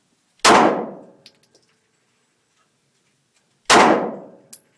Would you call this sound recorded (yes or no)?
yes